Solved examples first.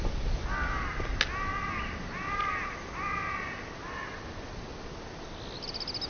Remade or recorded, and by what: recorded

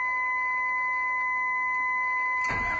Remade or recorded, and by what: recorded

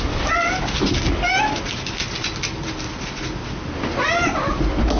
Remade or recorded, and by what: recorded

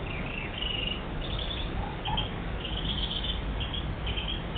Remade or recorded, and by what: remade, codec, DAC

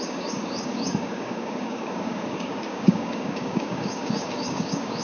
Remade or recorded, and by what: remade, codec, DAC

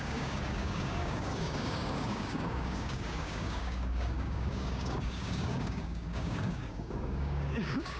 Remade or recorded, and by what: remade, codec, DAC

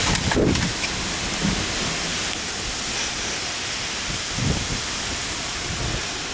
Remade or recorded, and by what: recorded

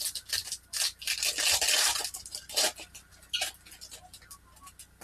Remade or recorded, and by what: recorded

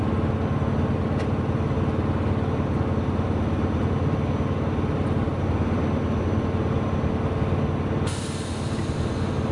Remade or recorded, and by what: recorded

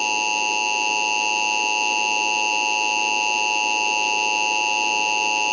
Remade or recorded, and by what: recorded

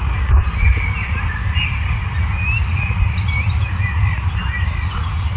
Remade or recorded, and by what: recorded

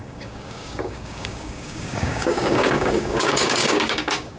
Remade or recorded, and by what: remade, codec, DAC